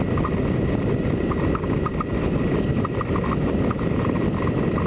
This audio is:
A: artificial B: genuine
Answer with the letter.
B